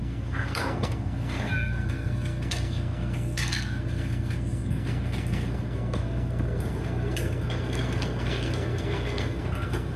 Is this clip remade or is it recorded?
remade